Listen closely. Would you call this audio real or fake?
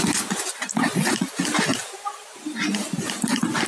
real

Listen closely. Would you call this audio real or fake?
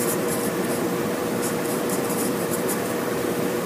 fake